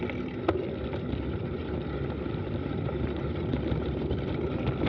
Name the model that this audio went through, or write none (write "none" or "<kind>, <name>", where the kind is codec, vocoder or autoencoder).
none